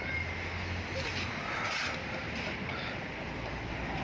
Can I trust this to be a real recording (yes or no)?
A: yes